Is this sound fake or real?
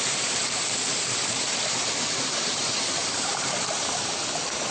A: fake